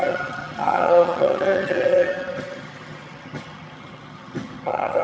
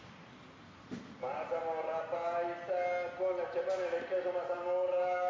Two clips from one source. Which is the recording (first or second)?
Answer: second